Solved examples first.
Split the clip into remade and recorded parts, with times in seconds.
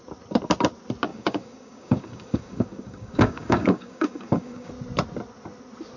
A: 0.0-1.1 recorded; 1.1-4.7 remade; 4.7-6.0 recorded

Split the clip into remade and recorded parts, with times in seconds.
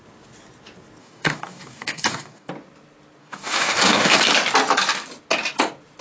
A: 0.0-1.0 recorded; 1.0-2.5 remade; 2.5-3.2 recorded; 3.2-4.2 remade; 4.2-6.0 recorded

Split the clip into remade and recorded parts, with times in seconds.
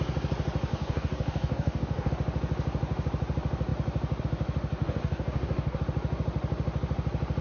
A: 0.0-0.7 recorded; 0.7-2.1 remade; 2.1-4.8 recorded; 4.8-5.8 remade; 5.8-7.4 recorded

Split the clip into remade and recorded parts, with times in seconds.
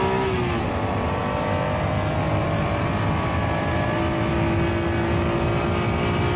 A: 0.0-6.4 recorded